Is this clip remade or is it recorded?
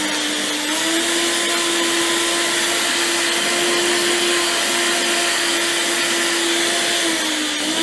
recorded